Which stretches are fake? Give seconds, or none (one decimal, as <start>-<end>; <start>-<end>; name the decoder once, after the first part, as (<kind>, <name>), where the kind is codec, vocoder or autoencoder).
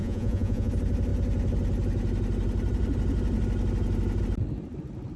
0.0-0.7 (vocoder, Vocos)